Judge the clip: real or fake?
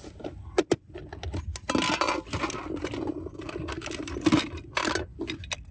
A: real